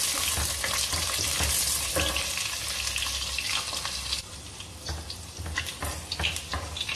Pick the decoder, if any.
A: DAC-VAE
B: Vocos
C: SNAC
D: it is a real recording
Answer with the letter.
D